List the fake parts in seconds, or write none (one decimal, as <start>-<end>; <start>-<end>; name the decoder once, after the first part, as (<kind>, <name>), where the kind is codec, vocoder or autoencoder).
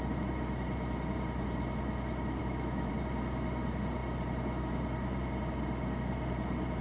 2.4-2.9 (autoencoder, DAC-VAE)